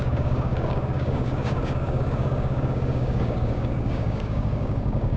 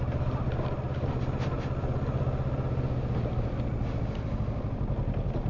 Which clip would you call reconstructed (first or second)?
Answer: first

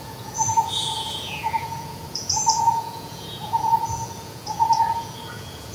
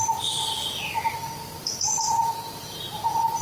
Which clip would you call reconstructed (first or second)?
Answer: first